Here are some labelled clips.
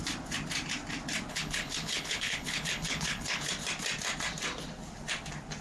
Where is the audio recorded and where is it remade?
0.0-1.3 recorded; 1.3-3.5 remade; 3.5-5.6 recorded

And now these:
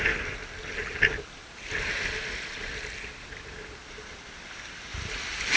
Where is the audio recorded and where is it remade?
0.0-5.6 recorded

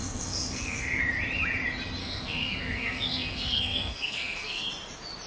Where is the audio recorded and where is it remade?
0.0-1.0 remade; 1.0-2.0 recorded; 2.0-4.7 remade; 4.7-5.3 recorded

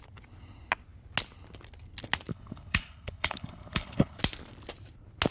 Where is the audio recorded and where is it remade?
0.0-2.3 recorded; 2.3-4.2 remade; 4.2-5.3 recorded

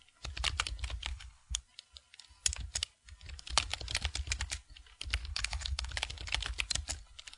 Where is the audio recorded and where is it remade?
0.0-1.1 recorded; 1.1-1.6 remade; 1.6-5.3 recorded; 5.3-5.9 remade; 5.9-7.4 recorded

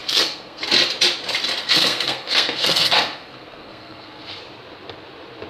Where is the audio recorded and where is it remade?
0.0-0.6 remade; 0.6-1.6 recorded; 1.6-4.4 remade; 4.4-5.5 recorded

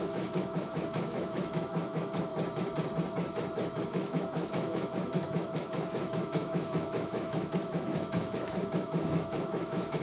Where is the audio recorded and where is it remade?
0.0-2.3 remade; 2.3-3.8 recorded; 3.8-10.0 remade